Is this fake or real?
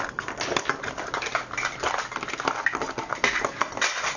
real